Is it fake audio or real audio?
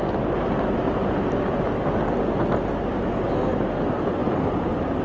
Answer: real